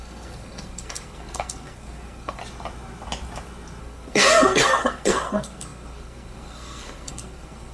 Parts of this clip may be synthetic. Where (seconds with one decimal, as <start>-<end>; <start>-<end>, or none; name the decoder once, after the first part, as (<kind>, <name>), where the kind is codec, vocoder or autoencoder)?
0.0-2.4 (codec, SNAC); 3.8-7.7